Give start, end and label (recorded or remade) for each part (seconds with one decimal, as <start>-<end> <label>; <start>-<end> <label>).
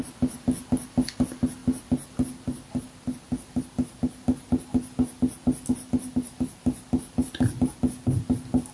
0.0-8.7 recorded